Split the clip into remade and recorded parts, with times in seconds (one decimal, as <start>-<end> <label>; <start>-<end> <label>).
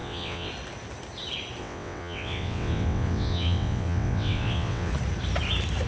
0.0-0.5 remade; 0.5-1.6 recorded; 1.6-4.9 remade; 4.9-5.9 recorded